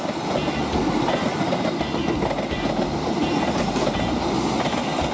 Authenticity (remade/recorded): recorded